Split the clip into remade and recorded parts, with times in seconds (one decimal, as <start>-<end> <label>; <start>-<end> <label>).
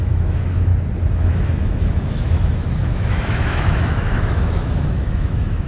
0.0-0.7 remade; 0.7-1.2 recorded; 1.2-5.7 remade